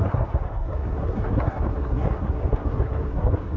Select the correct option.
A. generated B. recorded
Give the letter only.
A